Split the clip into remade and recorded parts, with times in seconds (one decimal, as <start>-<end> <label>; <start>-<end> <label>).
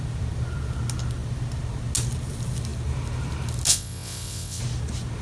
0.0-3.7 recorded; 3.7-4.6 remade; 4.6-5.2 recorded